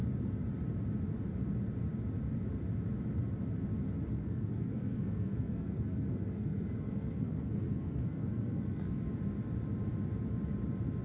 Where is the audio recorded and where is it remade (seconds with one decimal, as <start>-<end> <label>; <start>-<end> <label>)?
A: 0.0-4.1 recorded; 4.1-9.1 remade; 9.1-11.0 recorded